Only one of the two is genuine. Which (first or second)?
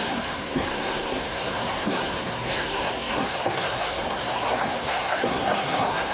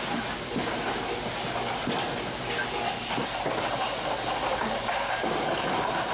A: second